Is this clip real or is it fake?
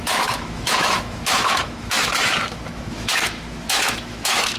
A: fake